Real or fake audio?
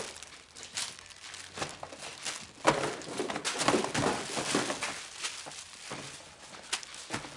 real